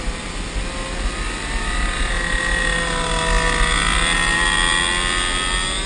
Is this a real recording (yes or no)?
yes